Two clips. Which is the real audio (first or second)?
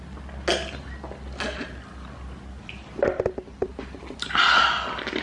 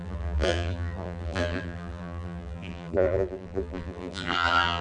first